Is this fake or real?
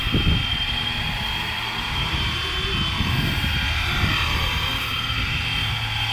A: real